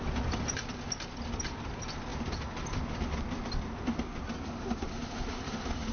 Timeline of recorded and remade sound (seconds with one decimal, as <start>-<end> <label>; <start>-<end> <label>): 0.0-5.9 recorded